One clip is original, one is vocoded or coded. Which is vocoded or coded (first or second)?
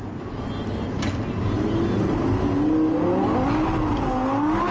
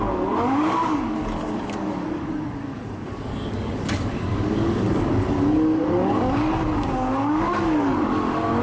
second